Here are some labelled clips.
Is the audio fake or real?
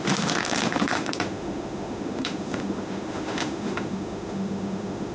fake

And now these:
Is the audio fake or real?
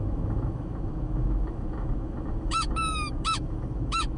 fake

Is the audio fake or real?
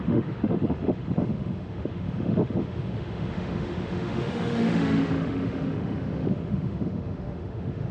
fake